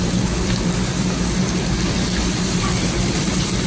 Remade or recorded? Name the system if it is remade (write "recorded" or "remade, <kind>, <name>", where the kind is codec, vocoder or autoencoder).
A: recorded